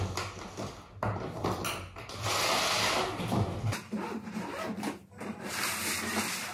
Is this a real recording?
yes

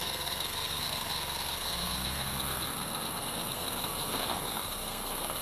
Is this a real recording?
no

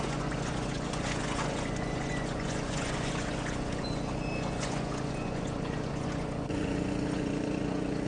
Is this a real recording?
no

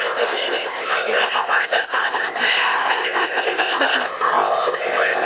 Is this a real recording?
no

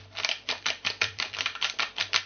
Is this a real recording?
no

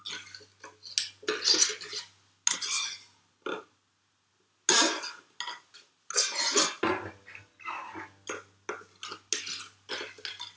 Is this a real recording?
yes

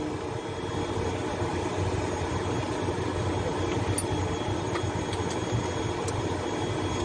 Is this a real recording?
yes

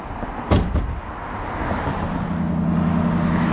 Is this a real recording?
yes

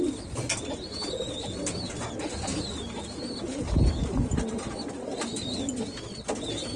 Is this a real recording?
yes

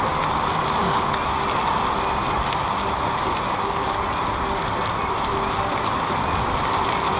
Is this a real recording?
yes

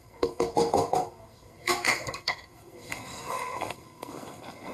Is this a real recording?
no